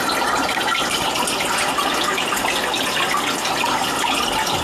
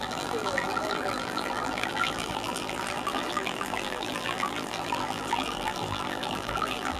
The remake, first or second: second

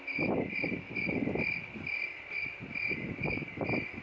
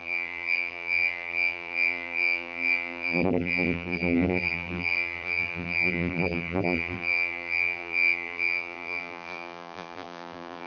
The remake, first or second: second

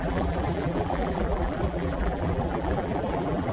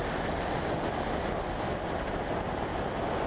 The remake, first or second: first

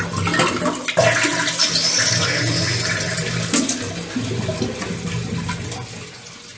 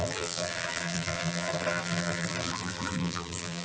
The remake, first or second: second